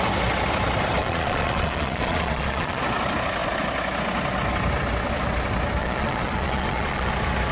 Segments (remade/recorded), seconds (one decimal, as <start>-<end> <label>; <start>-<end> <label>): 0.0-1.0 recorded; 1.0-2.8 remade; 2.8-5.8 recorded; 5.8-7.1 remade; 7.1-7.5 recorded